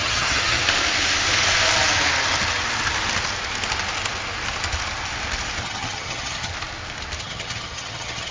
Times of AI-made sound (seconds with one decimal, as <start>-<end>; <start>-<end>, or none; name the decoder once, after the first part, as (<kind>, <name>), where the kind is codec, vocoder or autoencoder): 0.0-0.6 (vocoder, HiFi-GAN); 5.6-6.5; 7.2-8.3